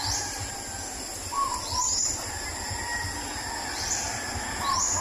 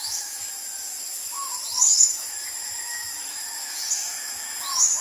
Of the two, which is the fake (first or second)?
second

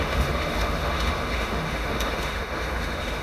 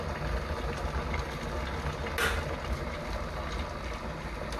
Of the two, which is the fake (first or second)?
first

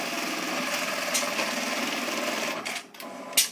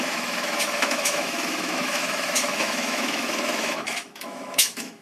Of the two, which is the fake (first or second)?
second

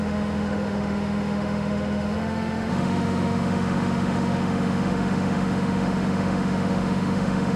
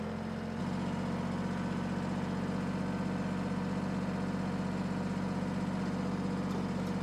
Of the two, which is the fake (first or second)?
first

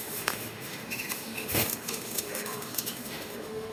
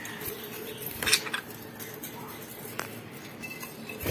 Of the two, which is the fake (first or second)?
first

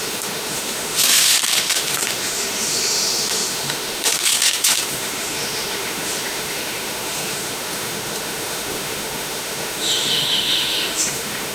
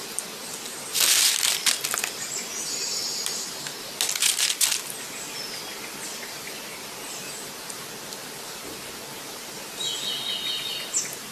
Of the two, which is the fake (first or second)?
first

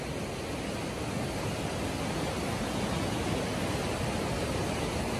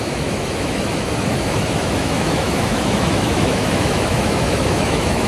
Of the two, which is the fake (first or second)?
second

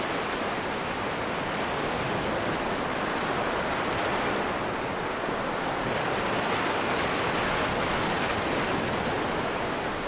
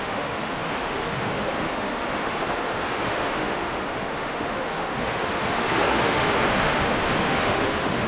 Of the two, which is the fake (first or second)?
second